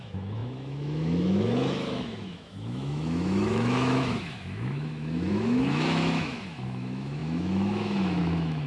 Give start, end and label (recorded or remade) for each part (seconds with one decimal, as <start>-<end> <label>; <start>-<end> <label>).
0.0-8.7 remade